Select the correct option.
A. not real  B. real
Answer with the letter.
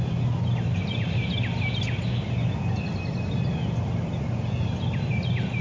B